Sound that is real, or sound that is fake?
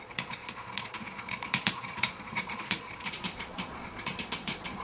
fake